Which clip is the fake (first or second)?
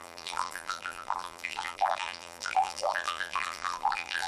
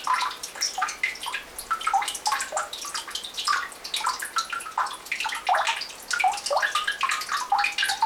first